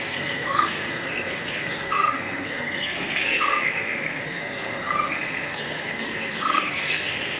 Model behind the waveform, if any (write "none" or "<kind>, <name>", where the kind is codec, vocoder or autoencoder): codec, SNAC